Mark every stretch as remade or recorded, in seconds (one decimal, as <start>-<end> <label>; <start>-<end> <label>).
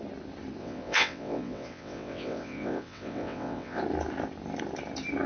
0.0-0.6 recorded; 0.6-3.8 remade; 3.8-5.3 recorded